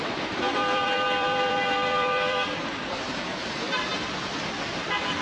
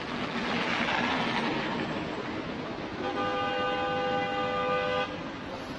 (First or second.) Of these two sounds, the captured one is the second